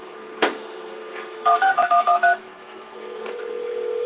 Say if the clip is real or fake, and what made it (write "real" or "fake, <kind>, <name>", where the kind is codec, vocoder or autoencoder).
fake, codec, SNAC